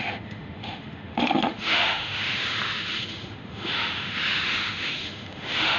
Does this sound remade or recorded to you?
remade